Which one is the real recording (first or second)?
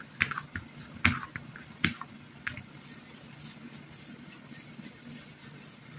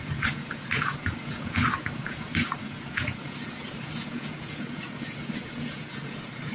first